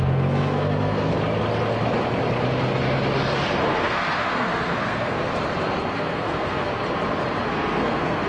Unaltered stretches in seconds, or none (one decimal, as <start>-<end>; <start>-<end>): 1.1-3.8; 5.3-5.9; 6.7-7.5